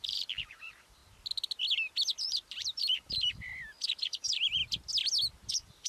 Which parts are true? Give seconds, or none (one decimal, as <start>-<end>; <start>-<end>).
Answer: 1.0-2.2; 3.5-4.0; 4.6-5.5